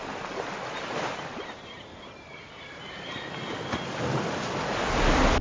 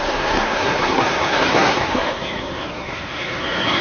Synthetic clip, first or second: second